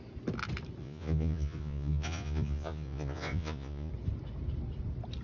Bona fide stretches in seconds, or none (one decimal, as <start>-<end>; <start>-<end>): 0.0-0.8; 3.9-5.2